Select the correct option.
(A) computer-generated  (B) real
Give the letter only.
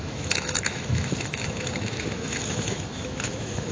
A